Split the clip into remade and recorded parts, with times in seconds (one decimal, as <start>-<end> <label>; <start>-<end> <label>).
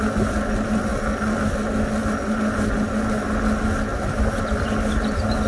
0.0-3.9 recorded; 3.9-4.4 remade; 4.4-5.5 recorded